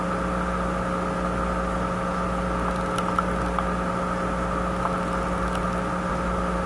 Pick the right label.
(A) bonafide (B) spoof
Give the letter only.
A